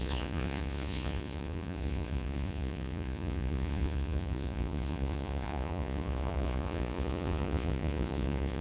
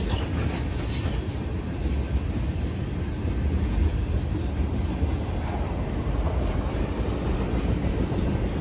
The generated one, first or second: first